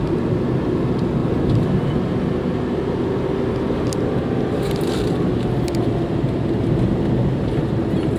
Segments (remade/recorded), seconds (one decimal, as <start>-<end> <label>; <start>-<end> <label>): 0.0-8.2 recorded

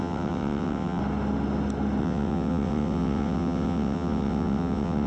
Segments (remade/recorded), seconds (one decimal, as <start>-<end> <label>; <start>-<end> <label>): 0.0-1.0 remade; 1.0-2.0 recorded; 2.0-5.1 remade

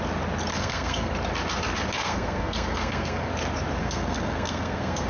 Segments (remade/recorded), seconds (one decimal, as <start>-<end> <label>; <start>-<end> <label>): 0.0-0.5 recorded; 0.5-1.1 remade; 1.1-2.0 recorded; 2.0-3.3 remade; 3.3-3.8 recorded; 3.8-5.1 remade

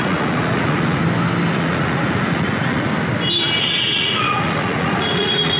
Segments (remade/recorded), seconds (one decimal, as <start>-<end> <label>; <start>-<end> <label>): 0.0-1.0 remade; 1.0-1.5 recorded; 1.5-2.9 remade; 2.9-3.6 recorded; 3.6-5.6 remade

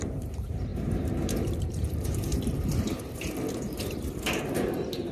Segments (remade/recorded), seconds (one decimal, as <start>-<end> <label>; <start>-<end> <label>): 0.0-5.1 remade

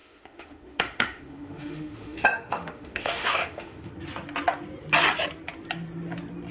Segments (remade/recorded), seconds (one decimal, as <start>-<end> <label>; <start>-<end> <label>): 0.0-3.9 remade; 3.9-6.5 recorded

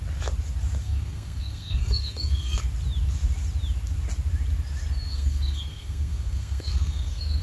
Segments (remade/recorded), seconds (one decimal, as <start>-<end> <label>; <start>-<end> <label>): 0.0-0.8 recorded; 0.8-2.6 remade; 2.6-5.1 recorded; 5.1-7.4 remade

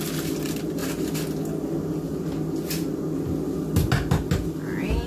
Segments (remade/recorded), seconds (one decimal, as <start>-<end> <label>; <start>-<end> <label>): 0.0-5.1 recorded